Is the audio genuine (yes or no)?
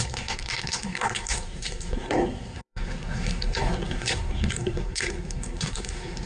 no